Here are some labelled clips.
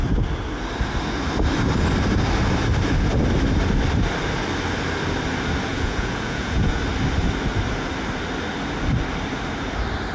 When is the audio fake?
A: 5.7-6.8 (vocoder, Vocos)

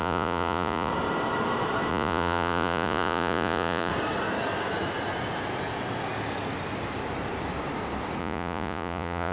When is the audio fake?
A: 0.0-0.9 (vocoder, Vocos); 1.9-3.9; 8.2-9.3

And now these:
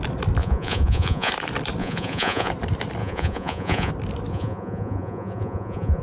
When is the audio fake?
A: 0.4-1.3 (vocoder, Vocos); 1.8-2.5; 3.0-3.9; 4.3-6.0